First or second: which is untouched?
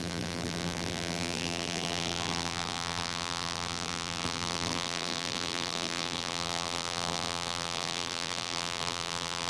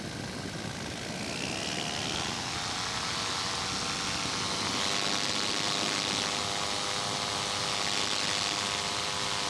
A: second